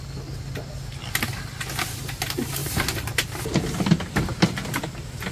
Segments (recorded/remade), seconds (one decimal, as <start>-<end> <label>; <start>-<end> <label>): 0.0-2.6 recorded; 2.6-3.4 remade; 3.4-5.3 recorded